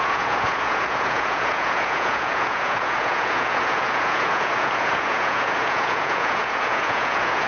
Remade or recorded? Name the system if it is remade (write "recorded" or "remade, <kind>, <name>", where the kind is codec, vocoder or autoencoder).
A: remade, vocoder, Vocos